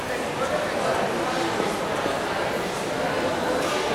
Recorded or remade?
recorded